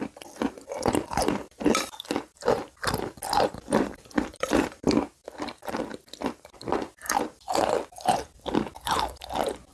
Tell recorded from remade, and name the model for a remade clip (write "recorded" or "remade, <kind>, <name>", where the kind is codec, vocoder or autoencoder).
remade, vocoder, BigVGAN v2